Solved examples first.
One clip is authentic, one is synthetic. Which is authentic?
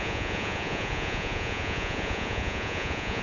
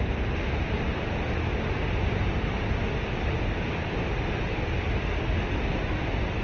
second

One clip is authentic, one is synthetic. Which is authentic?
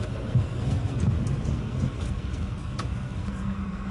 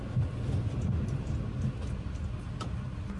second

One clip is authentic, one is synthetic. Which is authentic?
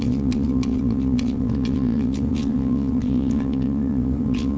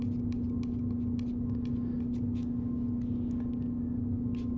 second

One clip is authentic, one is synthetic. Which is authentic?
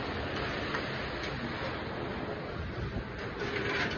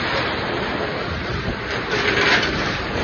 first